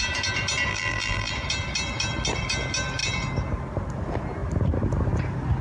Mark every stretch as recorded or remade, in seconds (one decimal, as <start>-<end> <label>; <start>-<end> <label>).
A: 0.0-0.7 recorded; 0.7-1.3 remade; 1.3-5.6 recorded